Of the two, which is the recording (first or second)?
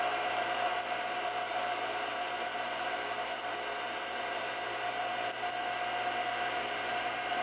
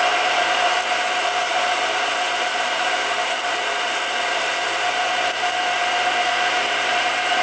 first